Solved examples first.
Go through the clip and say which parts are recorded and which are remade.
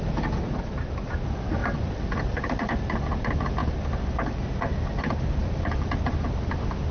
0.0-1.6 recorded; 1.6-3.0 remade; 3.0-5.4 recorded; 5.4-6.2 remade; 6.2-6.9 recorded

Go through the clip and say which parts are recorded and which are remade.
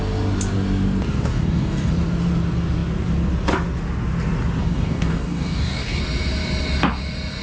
0.0-1.3 recorded; 1.3-1.9 remade; 1.9-4.6 recorded; 4.6-6.0 remade; 6.0-7.4 recorded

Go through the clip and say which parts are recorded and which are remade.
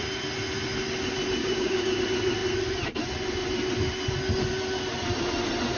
0.0-1.4 recorded; 1.4-2.0 remade; 2.0-5.8 recorded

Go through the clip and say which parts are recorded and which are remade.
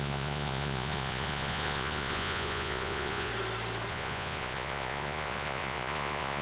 0.0-3.3 remade; 3.3-3.9 recorded; 3.9-6.4 remade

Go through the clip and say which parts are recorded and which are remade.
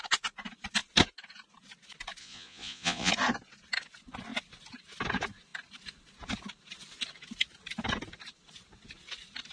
0.0-2.2 recorded; 2.2-3.1 remade; 3.1-9.5 recorded